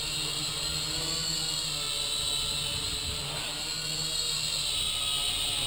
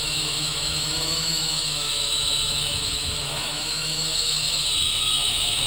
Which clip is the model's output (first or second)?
second